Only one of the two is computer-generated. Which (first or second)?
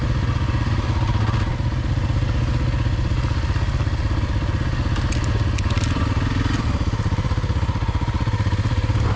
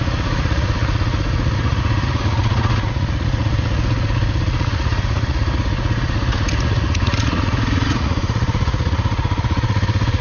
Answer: second